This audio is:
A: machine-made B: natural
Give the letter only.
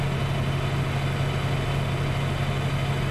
B